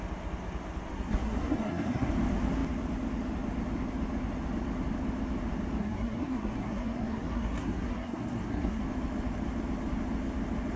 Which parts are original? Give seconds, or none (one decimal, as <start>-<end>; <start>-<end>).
0.0-0.9; 2.1-5.8; 8.8-10.8